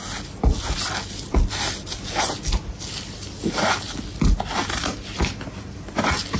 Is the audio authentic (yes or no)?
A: yes